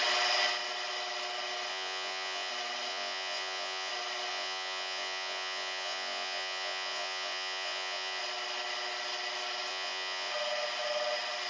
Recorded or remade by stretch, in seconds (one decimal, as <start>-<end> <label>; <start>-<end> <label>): 0.0-1.7 recorded; 1.7-2.5 remade; 2.5-2.9 recorded; 2.9-3.9 remade; 3.9-4.3 recorded; 4.3-8.2 remade; 8.2-9.7 recorded; 9.7-10.3 remade; 10.3-11.5 recorded